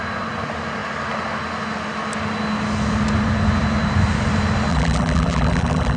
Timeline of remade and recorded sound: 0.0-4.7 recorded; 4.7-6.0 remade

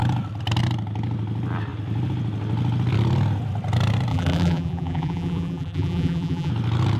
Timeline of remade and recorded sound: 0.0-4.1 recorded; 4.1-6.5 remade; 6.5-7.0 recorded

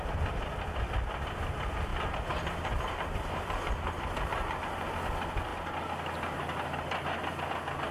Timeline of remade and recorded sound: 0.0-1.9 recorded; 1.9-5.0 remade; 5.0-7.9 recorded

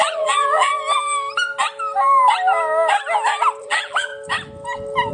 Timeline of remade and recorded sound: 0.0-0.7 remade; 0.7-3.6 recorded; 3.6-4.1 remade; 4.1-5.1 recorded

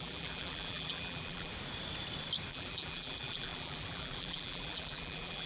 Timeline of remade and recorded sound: 0.0-1.5 remade; 1.5-2.5 recorded; 2.5-5.5 remade

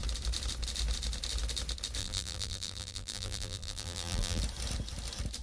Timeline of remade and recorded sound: 0.0-2.0 recorded; 2.0-4.4 remade; 4.4-5.4 recorded

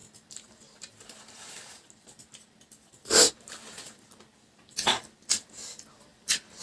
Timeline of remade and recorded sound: 0.0-6.1 recorded; 6.1-6.6 remade

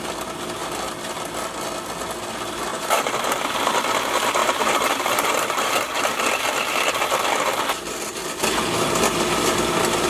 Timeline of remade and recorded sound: 0.0-2.7 recorded; 2.7-3.7 remade; 3.7-4.4 recorded; 4.4-5.7 remade; 5.7-10.1 recorded